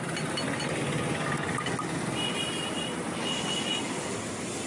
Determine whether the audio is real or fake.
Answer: real